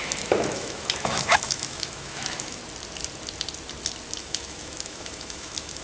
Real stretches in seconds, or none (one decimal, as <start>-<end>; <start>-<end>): 2.6-4.2